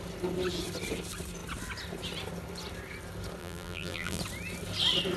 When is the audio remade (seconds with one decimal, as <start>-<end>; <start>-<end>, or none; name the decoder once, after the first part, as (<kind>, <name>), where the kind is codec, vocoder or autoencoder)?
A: 3.4-4.2 (vocoder, BigVGAN v2)